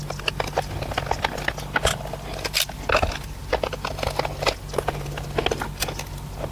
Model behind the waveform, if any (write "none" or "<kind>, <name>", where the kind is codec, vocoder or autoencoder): none